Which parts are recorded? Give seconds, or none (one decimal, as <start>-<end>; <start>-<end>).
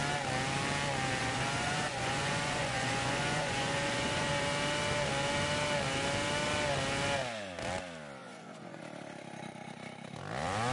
0.0-1.2; 4.3-8.2; 8.8-10.7